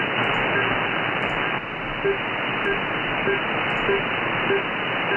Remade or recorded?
recorded